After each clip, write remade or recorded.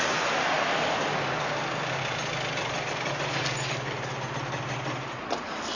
recorded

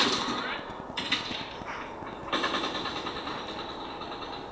remade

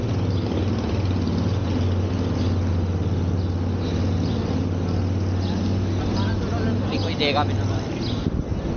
recorded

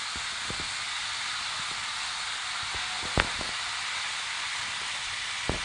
recorded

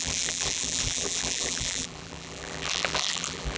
remade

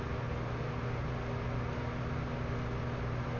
recorded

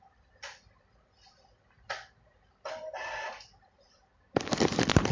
remade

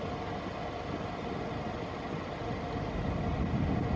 recorded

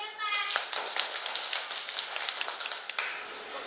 recorded